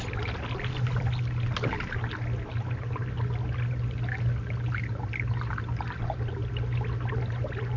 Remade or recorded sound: recorded